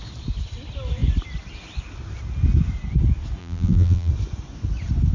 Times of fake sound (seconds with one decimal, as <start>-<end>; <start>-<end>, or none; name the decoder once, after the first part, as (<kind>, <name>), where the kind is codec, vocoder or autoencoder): 3.4-4.1 (vocoder, BigVGAN v2)